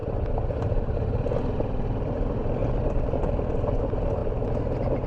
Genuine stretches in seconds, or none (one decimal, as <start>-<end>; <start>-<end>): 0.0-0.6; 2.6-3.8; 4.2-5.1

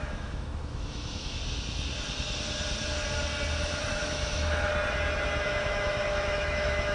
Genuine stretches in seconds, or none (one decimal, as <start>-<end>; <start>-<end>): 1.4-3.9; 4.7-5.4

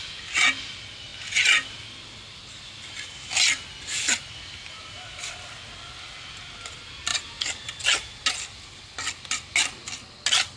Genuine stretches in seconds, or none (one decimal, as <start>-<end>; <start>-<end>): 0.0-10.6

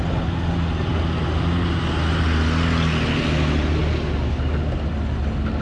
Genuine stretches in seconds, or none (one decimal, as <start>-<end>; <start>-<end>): 0.0-5.6

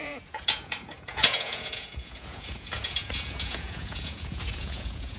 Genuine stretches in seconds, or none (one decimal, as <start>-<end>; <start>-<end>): none